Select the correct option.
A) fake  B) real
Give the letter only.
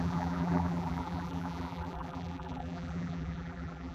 A